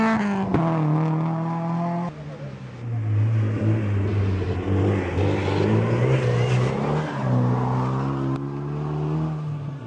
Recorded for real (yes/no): yes